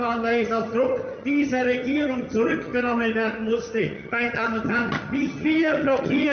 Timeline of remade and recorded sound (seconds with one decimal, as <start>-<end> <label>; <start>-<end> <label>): 0.0-6.3 remade